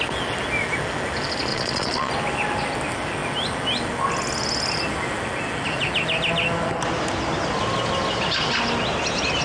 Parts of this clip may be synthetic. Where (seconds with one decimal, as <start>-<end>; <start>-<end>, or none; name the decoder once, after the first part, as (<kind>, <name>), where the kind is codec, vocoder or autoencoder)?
1.5-2.1 (vocoder, Vocos)

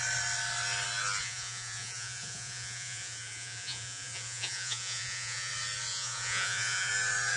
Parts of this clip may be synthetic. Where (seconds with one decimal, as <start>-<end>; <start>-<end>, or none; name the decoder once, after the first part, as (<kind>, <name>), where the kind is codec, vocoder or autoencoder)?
1.2-5.5 (vocoder, Vocos); 5.9-6.9

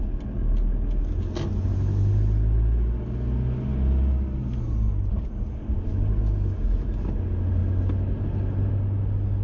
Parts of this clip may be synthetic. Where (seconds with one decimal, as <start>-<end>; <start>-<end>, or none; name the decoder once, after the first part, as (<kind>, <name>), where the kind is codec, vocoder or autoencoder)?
none

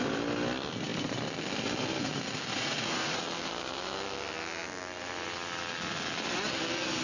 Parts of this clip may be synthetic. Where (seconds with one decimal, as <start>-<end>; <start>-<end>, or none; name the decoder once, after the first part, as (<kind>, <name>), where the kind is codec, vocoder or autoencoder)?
2.5-3.2 (vocoder, Vocos)

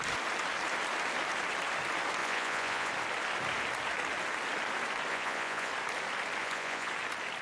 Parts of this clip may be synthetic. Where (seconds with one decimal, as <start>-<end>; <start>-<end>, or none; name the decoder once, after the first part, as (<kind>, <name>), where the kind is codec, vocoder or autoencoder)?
2.2-2.9 (vocoder, Vocos); 5.1-5.7; 6.4-6.9